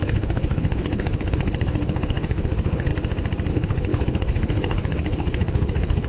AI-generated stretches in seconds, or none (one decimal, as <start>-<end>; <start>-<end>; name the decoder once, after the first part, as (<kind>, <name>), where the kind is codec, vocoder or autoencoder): 0.0-2.9 (codec, HILCodec); 3.5-6.1